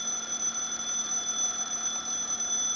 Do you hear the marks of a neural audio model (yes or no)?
no